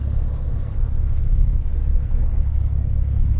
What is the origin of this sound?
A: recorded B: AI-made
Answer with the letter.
B